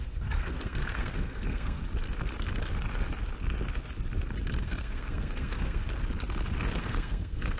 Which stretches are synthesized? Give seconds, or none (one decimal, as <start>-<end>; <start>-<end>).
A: 0.0-1.8; 4.6-5.8; 6.8-7.6